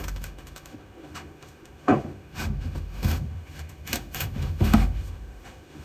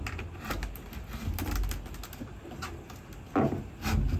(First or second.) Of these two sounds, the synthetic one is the first